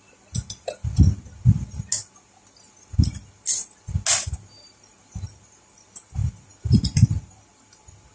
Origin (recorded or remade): recorded